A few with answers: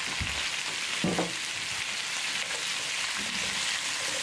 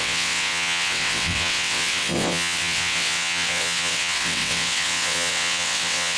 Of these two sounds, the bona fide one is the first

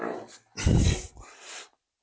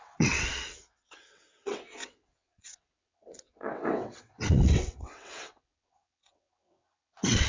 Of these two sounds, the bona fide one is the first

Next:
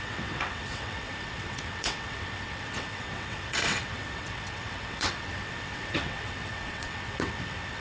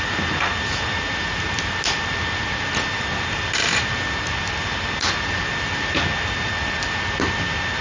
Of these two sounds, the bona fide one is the second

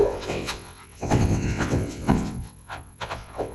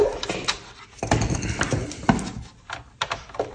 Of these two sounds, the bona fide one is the second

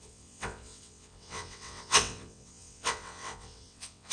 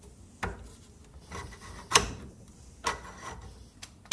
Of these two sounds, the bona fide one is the second